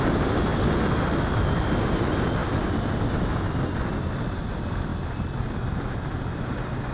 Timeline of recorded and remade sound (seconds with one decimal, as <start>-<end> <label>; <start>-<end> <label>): 0.0-6.9 recorded